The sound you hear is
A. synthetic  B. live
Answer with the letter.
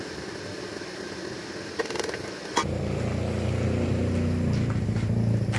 B